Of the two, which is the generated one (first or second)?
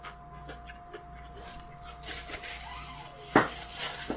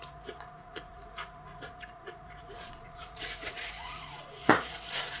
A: second